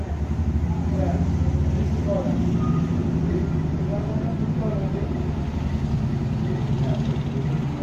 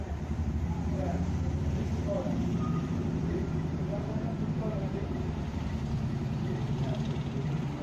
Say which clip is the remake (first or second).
second